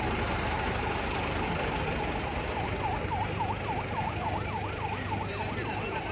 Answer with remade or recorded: recorded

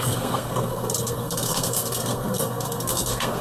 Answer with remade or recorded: remade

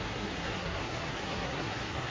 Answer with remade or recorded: remade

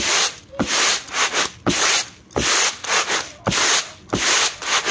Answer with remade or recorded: recorded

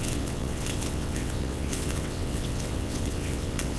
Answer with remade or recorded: remade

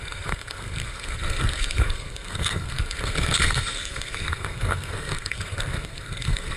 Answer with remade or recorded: remade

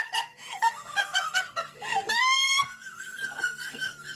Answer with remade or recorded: remade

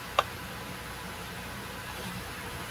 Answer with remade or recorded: recorded